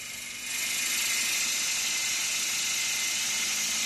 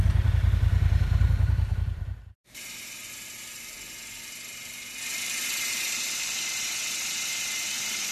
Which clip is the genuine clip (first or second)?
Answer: first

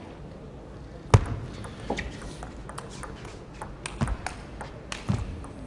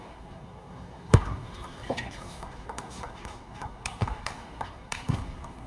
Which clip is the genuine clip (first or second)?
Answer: first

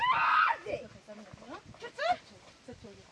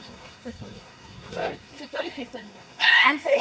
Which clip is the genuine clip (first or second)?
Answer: first